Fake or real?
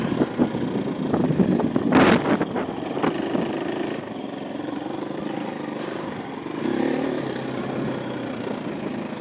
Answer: real